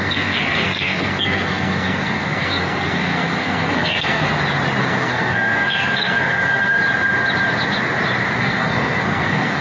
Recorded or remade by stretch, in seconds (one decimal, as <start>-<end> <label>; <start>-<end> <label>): 0.0-4.3 remade; 4.3-4.8 recorded; 4.8-6.8 remade; 6.8-8.4 recorded; 8.4-9.6 remade